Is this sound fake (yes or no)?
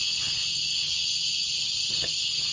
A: yes